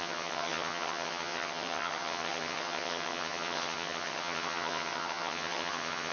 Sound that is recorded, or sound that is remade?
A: remade